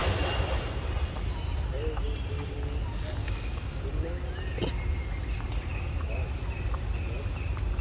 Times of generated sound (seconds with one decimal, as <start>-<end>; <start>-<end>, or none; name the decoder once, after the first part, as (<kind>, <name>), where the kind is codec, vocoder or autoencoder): 3.2-3.8 (codec, DAC)